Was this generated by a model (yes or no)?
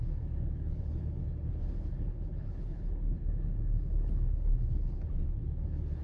yes